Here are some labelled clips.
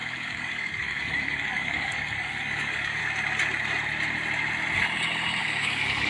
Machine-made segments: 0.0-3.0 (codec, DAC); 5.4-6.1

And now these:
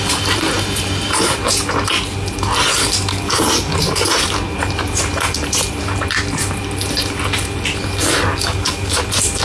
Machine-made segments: 3.1-3.8 (codec, DAC); 8.3-9.0

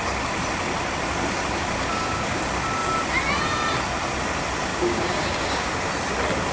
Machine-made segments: 1.9-2.4 (codec, DAC); 4.7-5.7

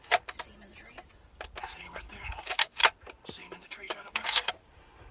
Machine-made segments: 1.8-2.8 (codec, DAC); 3.4-4.5

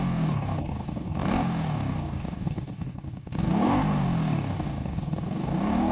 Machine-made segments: 0.0-5.9 (codec, DAC)

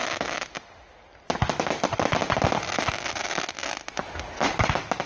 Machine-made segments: none